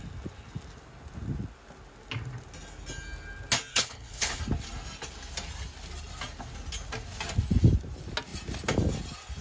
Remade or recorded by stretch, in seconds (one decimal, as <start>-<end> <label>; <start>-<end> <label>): 0.0-3.7 recorded; 3.7-4.4 remade; 4.4-9.4 recorded